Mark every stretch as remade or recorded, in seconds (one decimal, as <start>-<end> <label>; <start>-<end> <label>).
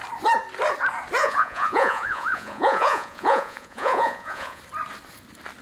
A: 0.0-1.2 recorded; 1.2-4.6 remade; 4.6-5.6 recorded